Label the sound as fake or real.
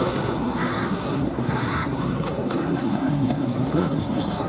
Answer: fake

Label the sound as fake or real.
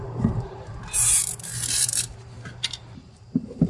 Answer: fake